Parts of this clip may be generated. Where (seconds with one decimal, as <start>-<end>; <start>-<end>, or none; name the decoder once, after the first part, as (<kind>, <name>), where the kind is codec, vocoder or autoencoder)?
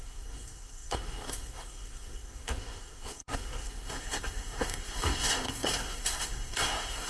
0.0-7.1 (codec, SNAC)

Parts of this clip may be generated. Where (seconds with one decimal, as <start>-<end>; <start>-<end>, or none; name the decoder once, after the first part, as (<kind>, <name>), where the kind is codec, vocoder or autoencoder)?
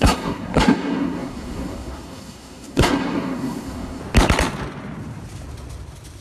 0.0-4.0 (codec, SNAC)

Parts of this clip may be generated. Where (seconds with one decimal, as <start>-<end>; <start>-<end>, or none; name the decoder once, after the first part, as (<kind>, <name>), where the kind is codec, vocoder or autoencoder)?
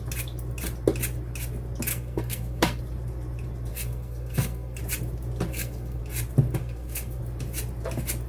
1.9-2.8 (codec, SNAC); 3.7-4.8; 5.5-6.0; 6.6-7.2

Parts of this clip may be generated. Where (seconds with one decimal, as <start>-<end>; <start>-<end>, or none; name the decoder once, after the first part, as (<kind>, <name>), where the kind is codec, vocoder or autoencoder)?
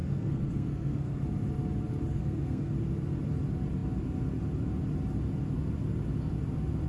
0.0-1.2 (codec, SNAC); 2.1-2.7